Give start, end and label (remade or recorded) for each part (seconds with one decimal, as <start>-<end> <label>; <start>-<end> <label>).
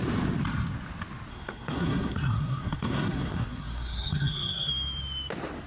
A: 0.0-1.3 recorded; 1.3-4.7 remade; 4.7-5.7 recorded